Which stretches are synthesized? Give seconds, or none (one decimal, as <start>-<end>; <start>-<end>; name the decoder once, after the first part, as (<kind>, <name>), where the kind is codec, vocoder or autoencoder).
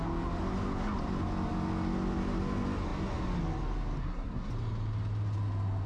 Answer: 4.0-4.5 (codec, SNAC)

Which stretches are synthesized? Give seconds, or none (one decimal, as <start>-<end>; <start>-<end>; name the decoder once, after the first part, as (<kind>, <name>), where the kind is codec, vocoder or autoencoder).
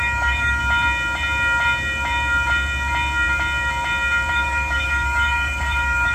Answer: 0.0-0.6 (codec, DAC); 4.3-6.1